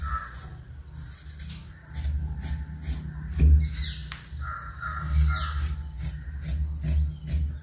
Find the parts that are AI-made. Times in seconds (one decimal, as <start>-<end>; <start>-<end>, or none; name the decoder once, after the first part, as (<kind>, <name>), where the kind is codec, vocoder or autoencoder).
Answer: 0.5-1.7 (vocoder, BigVGAN v2); 4.0-4.7